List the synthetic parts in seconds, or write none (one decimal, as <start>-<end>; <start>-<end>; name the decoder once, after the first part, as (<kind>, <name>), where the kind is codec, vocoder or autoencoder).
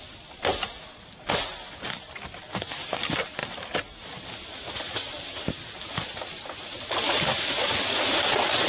none